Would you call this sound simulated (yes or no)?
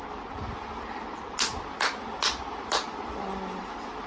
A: no